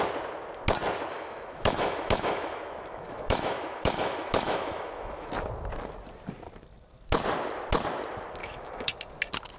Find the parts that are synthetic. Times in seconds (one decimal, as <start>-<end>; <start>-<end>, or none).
1.1-5.3; 8.4-8.9